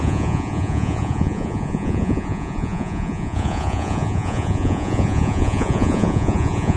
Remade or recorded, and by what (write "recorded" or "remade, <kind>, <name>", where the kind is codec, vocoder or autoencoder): remade, vocoder, Vocos